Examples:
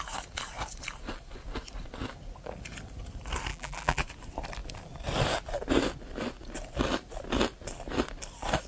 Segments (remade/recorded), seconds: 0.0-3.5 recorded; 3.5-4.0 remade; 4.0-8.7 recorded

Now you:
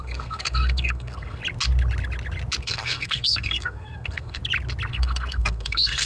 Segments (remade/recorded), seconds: 0.0-1.4 remade; 1.4-2.6 recorded; 2.6-4.4 remade; 4.4-4.9 recorded; 4.9-6.1 remade

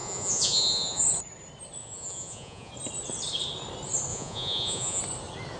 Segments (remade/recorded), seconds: 0.0-1.0 remade; 1.0-1.8 recorded; 1.8-2.7 remade; 2.7-4.1 recorded; 4.1-5.0 remade; 5.0-5.6 recorded

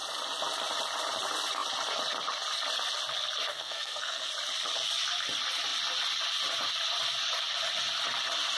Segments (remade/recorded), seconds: 0.0-3.5 recorded; 3.5-4.3 remade; 4.3-8.6 recorded

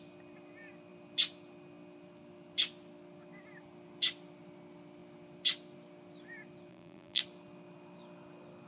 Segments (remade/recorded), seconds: 0.0-6.7 recorded; 6.7-7.2 remade; 7.2-8.7 recorded

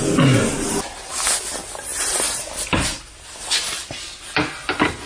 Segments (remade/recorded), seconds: 0.0-5.1 recorded

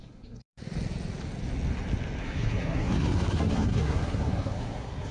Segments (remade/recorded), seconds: 0.0-0.6 remade; 0.6-2.2 recorded; 2.2-5.1 remade